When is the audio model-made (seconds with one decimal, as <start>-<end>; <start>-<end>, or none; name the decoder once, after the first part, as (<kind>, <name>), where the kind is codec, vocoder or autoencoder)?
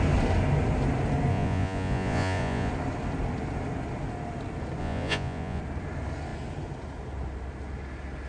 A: 1.3-2.7 (vocoder, Vocos); 4.8-5.6